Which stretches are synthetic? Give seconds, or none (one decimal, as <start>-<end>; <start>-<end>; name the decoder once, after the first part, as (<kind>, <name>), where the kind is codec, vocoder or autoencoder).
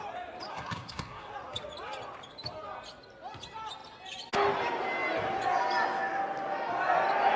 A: 0.5-1.3 (codec, SNAC)